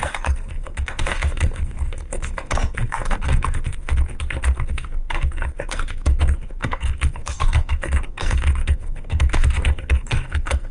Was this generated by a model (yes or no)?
yes